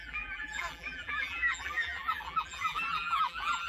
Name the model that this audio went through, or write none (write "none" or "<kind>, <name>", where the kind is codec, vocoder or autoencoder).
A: vocoder, BigVGAN v2